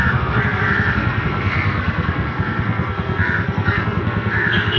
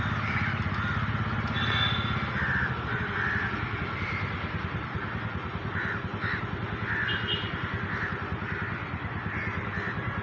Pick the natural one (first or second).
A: second